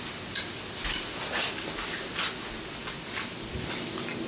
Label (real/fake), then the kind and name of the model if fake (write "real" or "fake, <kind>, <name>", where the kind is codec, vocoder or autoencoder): real